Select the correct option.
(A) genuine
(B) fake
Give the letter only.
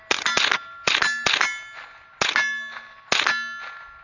A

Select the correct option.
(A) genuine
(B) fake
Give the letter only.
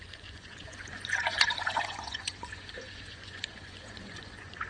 B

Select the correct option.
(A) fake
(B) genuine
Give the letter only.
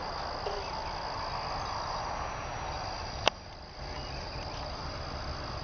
B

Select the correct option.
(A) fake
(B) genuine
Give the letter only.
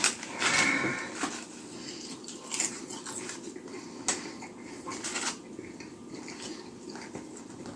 B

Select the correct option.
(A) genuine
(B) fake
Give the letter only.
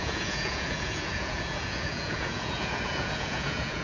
B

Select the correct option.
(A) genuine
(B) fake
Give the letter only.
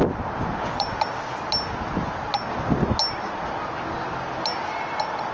A